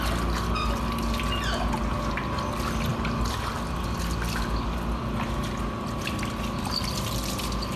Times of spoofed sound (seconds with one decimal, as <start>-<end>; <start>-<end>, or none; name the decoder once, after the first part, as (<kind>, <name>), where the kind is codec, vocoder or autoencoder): none